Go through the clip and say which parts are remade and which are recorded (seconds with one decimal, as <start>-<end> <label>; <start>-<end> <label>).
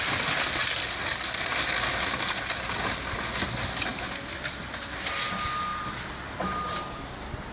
0.0-7.5 recorded